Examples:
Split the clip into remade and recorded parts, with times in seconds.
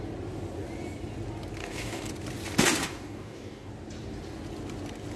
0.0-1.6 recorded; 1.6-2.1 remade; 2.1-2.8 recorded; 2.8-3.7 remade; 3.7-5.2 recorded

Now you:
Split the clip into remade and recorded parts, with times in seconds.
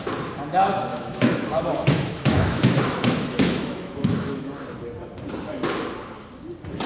0.0-0.9 recorded; 0.9-4.5 remade; 4.5-6.9 recorded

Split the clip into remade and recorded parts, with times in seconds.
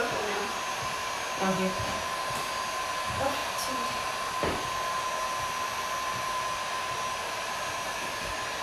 0.0-8.6 remade